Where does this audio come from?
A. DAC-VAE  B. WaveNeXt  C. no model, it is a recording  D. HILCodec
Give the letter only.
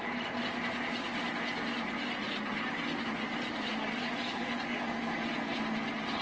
C